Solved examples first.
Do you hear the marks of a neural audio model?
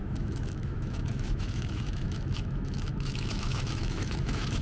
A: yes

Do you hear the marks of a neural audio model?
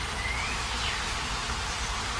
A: no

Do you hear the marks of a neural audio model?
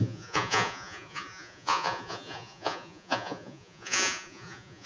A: yes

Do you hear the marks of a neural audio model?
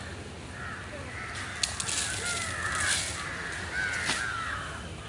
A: no